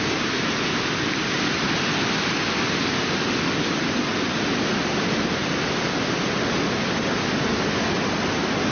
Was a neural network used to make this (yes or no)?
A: no